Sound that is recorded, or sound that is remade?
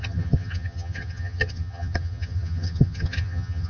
remade